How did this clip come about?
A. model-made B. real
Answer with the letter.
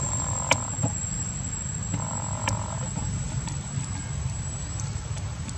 B